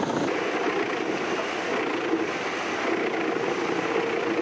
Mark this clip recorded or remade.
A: recorded